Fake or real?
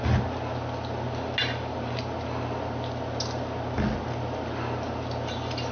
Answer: real